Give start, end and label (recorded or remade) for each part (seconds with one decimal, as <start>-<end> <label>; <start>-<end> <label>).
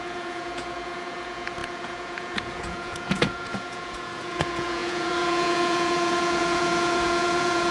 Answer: 0.0-7.7 remade